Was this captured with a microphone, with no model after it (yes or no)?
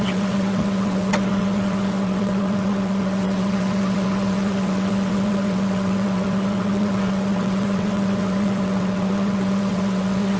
no